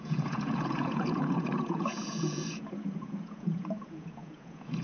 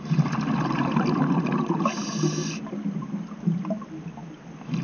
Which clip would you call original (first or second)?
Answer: second